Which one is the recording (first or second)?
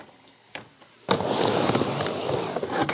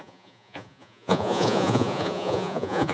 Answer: first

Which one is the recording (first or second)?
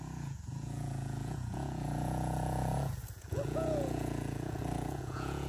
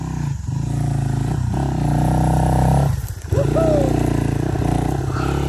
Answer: second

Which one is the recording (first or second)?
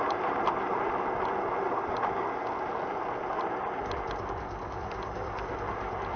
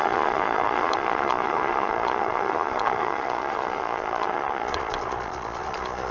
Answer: first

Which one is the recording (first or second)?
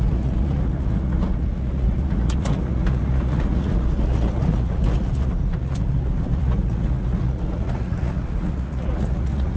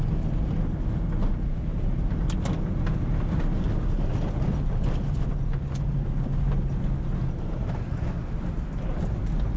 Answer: second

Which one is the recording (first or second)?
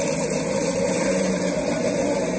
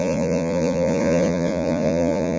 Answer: first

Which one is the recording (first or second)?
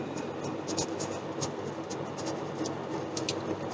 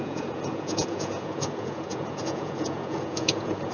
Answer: first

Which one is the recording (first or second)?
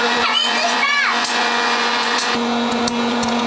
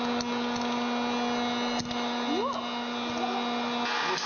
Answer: second